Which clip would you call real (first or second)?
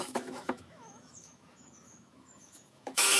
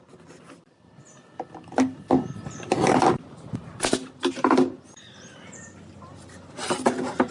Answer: second